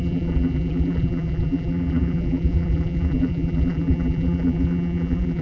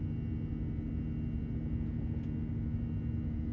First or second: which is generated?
first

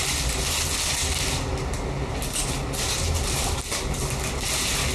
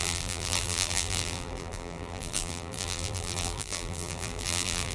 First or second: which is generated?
second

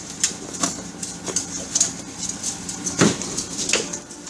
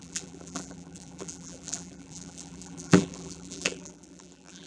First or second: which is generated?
second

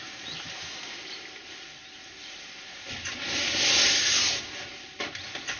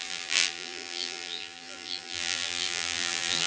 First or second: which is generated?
second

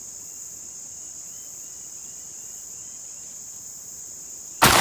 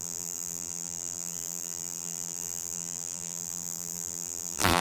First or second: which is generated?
second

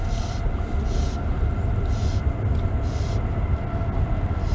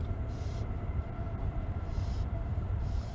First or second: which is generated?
second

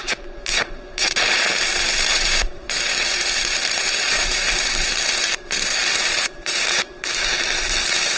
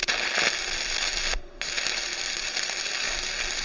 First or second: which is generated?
first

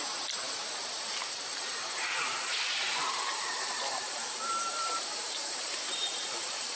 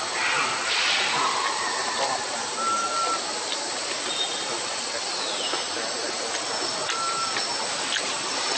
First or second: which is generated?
first